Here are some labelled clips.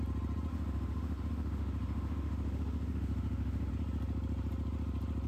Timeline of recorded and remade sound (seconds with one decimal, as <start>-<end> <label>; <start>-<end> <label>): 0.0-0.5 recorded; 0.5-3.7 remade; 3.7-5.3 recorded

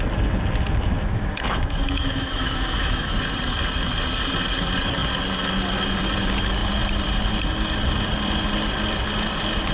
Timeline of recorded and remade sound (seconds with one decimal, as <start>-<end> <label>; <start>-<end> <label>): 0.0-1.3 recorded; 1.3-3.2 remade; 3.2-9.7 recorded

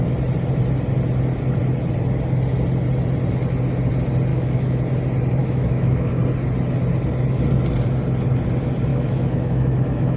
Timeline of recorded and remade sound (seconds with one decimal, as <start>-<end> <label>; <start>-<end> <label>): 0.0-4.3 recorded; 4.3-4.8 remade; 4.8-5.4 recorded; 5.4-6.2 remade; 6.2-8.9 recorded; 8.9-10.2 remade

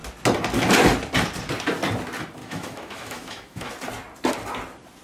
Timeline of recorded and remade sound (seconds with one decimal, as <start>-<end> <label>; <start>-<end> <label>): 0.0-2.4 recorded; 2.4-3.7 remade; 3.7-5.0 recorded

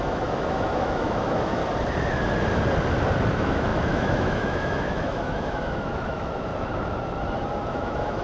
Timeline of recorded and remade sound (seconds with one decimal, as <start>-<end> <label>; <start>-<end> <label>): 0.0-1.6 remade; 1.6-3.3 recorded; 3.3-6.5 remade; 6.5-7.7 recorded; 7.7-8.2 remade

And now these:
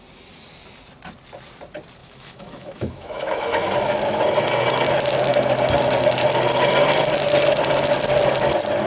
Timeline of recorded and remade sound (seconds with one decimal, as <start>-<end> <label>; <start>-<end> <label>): 0.0-2.0 recorded; 2.0-4.2 remade; 4.2-8.9 recorded

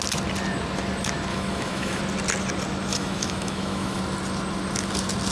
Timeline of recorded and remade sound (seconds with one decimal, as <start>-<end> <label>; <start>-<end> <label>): 0.0-1.3 recorded; 1.3-2.0 remade; 2.0-2.9 recorded; 2.9-4.0 remade; 4.0-5.3 recorded

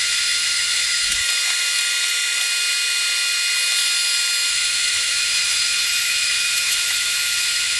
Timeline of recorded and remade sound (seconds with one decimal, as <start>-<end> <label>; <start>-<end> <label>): 0.0-1.2 remade; 1.2-4.5 recorded; 4.5-7.8 remade